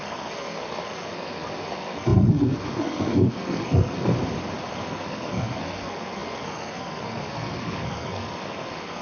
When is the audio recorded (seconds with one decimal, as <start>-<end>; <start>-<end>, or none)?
4.1-4.7